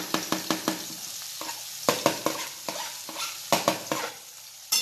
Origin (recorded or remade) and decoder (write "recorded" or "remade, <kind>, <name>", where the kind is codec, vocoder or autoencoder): recorded